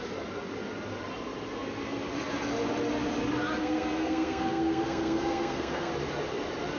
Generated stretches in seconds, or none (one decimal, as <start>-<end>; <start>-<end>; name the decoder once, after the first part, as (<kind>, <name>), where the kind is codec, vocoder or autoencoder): 3.6-5.9 (codec, SNAC)